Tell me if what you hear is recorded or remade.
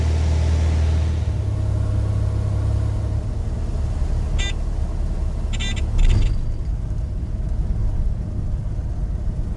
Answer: recorded